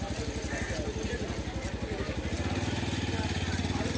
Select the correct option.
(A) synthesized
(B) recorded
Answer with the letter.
B